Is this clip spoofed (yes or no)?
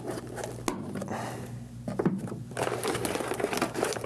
no